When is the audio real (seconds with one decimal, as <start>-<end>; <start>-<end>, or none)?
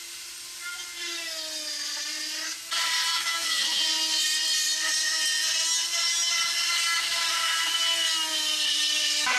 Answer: 0.0-3.1; 3.8-9.4